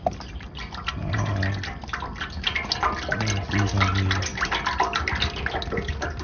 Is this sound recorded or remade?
recorded